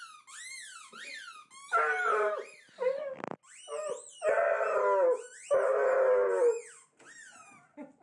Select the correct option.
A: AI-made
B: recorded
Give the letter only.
B